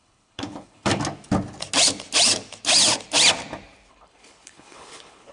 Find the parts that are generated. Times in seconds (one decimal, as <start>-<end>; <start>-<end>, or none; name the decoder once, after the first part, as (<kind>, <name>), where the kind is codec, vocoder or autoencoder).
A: 0.0-0.9 (codec, HILCodec); 3.9-5.3